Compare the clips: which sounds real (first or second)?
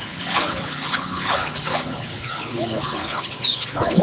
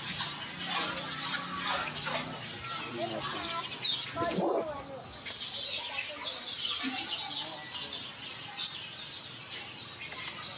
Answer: second